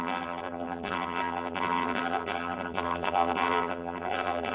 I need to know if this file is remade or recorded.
remade